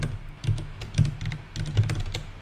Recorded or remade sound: recorded